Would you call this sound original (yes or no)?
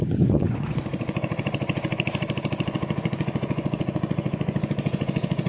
no